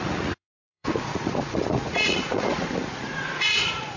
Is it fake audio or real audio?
fake